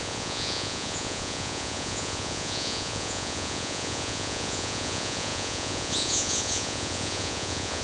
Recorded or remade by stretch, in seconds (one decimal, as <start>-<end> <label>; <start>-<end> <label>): 0.0-7.8 remade